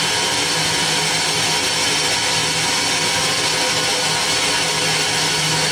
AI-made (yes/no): no